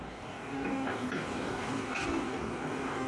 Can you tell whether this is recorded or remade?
remade